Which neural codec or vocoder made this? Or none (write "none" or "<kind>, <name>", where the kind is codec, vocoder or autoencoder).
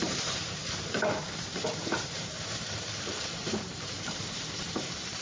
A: vocoder, BigVGAN v2